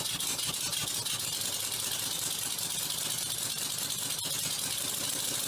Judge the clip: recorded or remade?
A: recorded